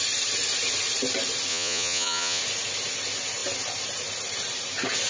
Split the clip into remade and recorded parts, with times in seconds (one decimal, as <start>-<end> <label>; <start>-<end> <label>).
0.0-1.5 recorded; 1.5-2.4 remade; 2.4-5.1 recorded

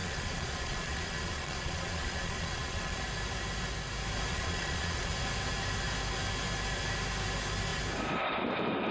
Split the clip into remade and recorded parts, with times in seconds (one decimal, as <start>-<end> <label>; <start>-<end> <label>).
0.0-3.0 remade; 3.0-4.3 recorded; 4.3-5.1 remade; 5.1-8.9 recorded

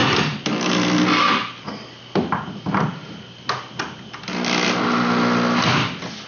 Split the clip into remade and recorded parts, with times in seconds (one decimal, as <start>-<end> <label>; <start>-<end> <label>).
0.0-6.3 recorded

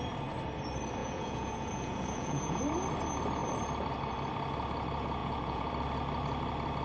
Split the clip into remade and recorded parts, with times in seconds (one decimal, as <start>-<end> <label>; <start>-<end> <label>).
0.0-1.0 recorded; 1.0-2.6 remade; 2.6-5.2 recorded; 5.2-5.7 remade; 5.7-6.8 recorded

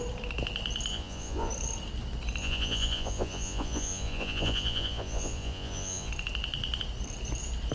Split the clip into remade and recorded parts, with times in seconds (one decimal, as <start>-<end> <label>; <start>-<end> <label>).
0.0-0.9 recorded; 0.9-1.5 remade; 1.5-2.4 recorded; 2.4-6.1 remade; 6.1-7.7 recorded

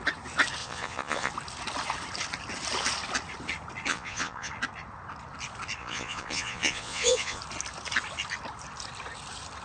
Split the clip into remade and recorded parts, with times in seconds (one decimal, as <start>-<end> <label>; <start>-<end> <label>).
0.0-0.6 recorded; 0.6-1.3 remade; 1.3-3.9 recorded; 3.9-4.5 remade; 4.5-5.8 recorded; 5.8-7.4 remade; 7.4-9.6 recorded

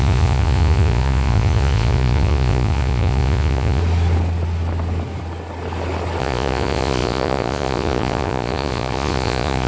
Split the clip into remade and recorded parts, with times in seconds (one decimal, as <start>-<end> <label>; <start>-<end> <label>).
0.0-3.8 remade; 3.8-6.2 recorded; 6.2-9.7 remade